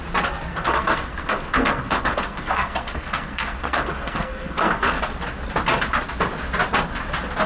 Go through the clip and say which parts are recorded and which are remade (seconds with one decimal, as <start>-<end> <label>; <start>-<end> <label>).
0.0-0.5 recorded; 0.5-5.0 remade; 5.0-7.5 recorded